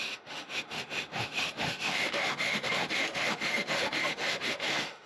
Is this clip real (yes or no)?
no